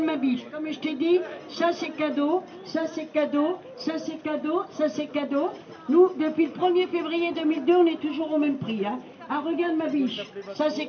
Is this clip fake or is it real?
real